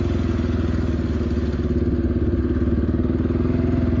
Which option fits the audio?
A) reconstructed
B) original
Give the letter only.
B